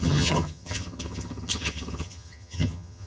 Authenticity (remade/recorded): remade